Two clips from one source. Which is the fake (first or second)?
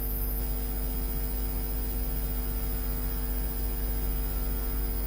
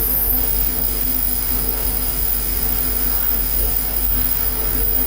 second